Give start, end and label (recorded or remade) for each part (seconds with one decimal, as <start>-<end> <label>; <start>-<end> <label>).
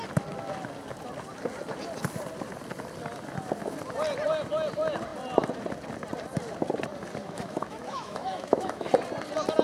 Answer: 0.0-7.2 recorded; 7.2-8.9 remade; 8.9-9.6 recorded